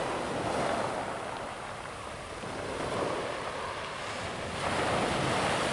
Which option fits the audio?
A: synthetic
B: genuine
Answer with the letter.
B